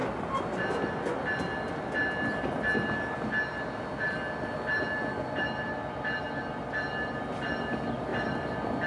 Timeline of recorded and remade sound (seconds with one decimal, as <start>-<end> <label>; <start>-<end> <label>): 0.0-8.9 recorded